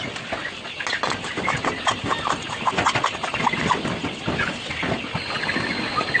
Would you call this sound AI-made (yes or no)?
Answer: no